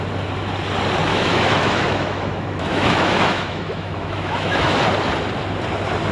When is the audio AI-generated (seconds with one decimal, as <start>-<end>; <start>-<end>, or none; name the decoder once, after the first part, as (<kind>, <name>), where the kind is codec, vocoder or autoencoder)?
1.1-4.8 (autoencoder, DAC-VAE)